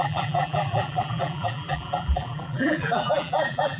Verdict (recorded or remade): remade